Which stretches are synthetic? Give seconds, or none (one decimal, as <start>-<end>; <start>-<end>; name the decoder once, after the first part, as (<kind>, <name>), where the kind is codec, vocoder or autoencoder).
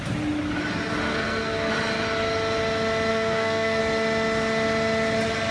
1.1-1.7 (codec, SNAC); 3.1-3.8